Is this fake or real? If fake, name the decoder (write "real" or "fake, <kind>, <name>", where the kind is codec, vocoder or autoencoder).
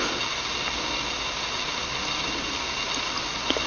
real